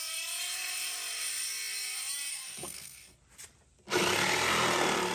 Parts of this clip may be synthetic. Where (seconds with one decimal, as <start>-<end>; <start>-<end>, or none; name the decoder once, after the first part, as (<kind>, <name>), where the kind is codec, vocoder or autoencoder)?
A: 2.3-3.1 (codec, SNAC)